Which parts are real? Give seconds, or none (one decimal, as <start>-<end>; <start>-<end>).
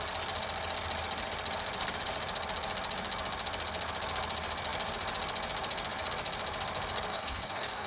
0.0-7.1